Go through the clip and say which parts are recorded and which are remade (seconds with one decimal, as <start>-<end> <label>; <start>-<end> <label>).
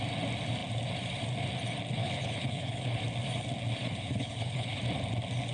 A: 0.0-2.0 recorded; 2.0-3.0 remade; 3.0-3.8 recorded; 3.8-4.8 remade; 4.8-5.5 recorded